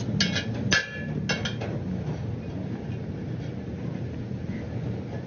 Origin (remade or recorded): recorded